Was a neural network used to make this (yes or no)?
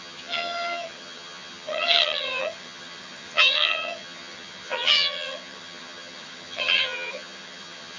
yes